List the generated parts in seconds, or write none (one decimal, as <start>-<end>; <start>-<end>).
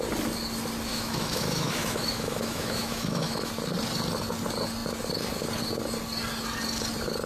0.9-3.5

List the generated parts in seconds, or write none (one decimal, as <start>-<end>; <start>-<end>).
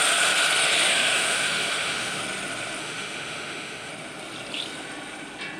0.9-2.2; 2.8-3.9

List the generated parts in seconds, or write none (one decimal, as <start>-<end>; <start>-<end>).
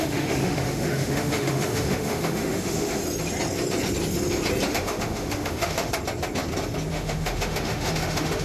0.0-3.0; 4.7-5.9; 6.9-8.4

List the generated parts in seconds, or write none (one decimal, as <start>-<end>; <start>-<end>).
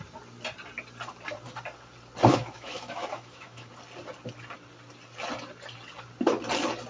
2.3-3.7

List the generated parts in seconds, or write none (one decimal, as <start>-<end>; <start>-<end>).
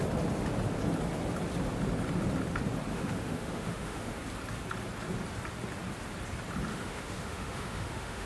2.9-4.2; 6.7-8.3